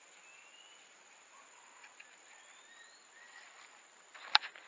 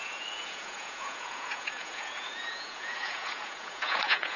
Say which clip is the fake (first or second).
second